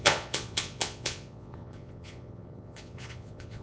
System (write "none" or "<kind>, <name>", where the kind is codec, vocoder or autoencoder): vocoder, Vocos